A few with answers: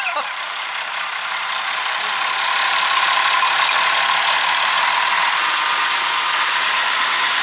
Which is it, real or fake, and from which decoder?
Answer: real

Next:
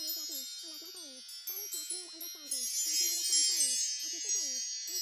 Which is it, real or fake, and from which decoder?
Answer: real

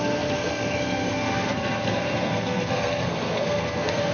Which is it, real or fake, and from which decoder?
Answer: fake, codec, SNAC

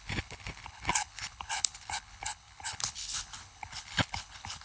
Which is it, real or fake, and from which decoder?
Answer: fake, codec, HILCodec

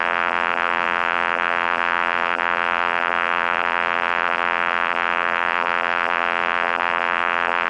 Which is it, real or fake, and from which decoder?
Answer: fake, vocoder, BigVGAN v2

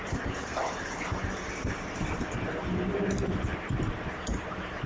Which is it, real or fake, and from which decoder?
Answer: real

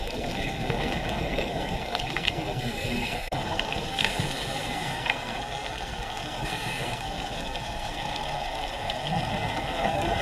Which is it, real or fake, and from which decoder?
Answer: fake, codec, SNAC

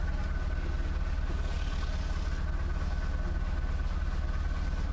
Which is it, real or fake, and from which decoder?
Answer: real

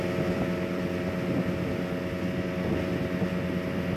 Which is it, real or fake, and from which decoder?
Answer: real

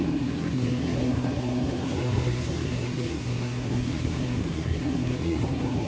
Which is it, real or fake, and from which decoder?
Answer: fake, codec, SNAC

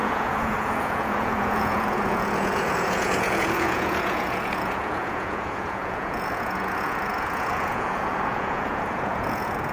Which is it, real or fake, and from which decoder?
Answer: fake, vocoder, Vocos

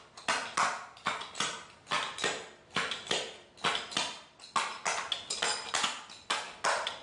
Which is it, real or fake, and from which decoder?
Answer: real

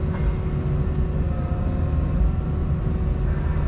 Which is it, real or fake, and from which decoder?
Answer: real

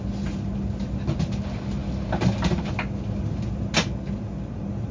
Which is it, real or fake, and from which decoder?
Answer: real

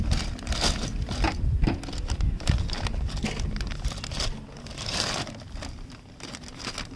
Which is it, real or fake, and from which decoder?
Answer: real